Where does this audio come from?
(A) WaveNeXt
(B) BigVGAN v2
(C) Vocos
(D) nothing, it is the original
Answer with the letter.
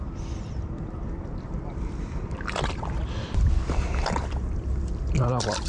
B